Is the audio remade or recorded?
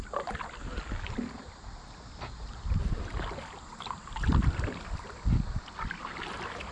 recorded